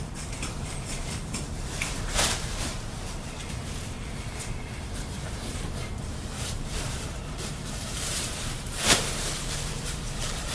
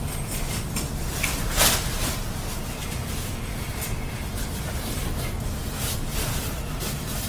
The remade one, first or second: first